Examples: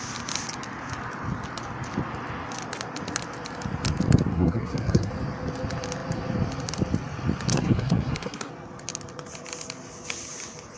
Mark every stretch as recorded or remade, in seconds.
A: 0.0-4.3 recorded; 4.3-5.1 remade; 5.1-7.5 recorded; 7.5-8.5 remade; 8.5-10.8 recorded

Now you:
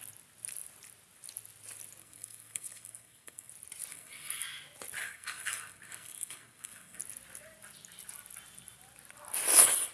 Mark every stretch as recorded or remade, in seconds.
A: 0.0-2.0 recorded; 2.0-3.5 remade; 3.5-3.9 recorded; 3.9-4.4 remade; 4.4-5.0 recorded; 5.0-7.0 remade; 7.0-9.9 recorded

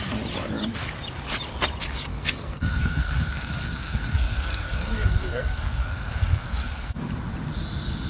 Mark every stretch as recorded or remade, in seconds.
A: 0.0-2.1 recorded; 2.1-7.0 remade; 7.0-8.1 recorded

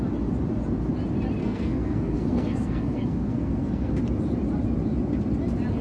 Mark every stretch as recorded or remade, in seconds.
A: 0.0-1.4 recorded; 1.4-4.0 remade; 4.0-5.8 recorded

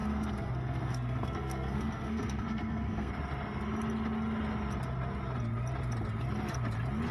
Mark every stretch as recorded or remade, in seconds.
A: 0.0-3.1 remade; 3.1-7.1 recorded

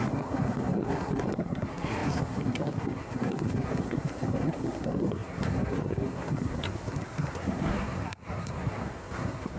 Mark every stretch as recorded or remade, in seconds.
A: 0.0-9.6 remade